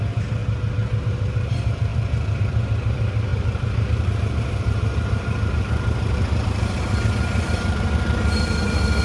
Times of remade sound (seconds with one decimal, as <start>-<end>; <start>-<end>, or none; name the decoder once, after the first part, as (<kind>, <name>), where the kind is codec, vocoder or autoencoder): 0.0-0.4 (vocoder, BigVGAN v2); 1.0-9.0